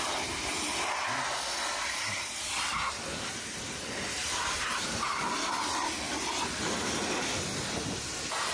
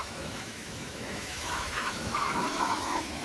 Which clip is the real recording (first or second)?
first